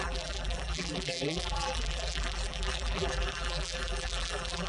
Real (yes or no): no